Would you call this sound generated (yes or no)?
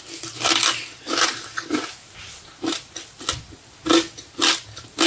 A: no